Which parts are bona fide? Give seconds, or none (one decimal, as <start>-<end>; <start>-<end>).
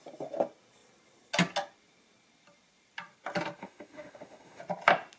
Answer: 0.0-3.6; 4.6-5.2